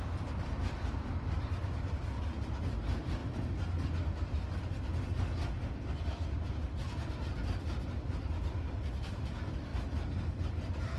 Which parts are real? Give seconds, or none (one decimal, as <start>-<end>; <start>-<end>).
3.2-7.9; 9.7-10.5